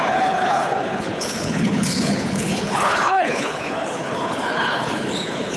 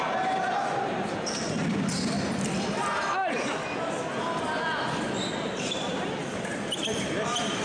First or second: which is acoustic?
second